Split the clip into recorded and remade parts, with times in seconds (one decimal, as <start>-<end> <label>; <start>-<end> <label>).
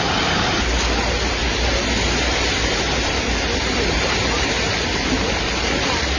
0.0-1.0 recorded; 1.0-4.7 remade; 4.7-6.2 recorded